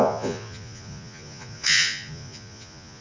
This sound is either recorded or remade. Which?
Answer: remade